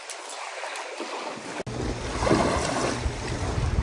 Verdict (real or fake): real